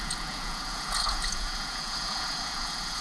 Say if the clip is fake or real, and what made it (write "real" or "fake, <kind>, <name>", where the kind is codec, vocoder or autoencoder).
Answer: fake, vocoder, Vocos